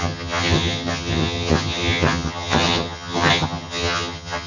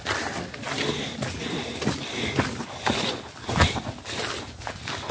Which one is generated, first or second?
first